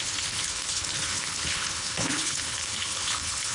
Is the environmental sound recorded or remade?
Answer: remade